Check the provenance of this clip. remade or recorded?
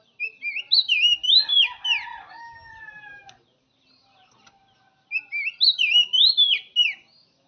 recorded